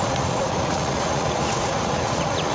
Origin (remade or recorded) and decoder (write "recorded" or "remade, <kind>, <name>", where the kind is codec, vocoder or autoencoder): remade, vocoder, Vocos